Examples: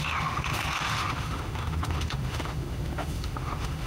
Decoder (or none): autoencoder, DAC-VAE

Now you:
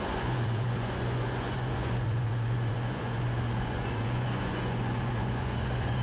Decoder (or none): vocoder, Vocos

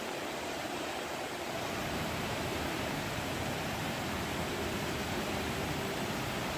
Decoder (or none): vocoder, BigVGAN v2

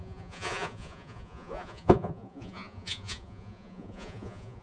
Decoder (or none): vocoder, Vocos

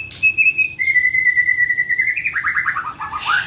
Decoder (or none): none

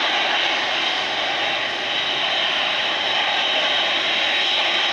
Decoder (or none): none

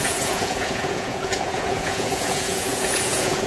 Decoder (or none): vocoder, Vocos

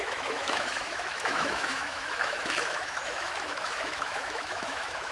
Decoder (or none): autoencoder, DAC-VAE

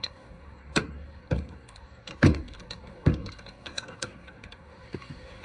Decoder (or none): codec, SNAC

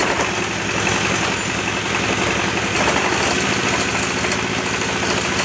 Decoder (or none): none